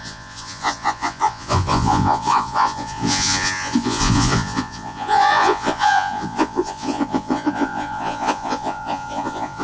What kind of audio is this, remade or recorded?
remade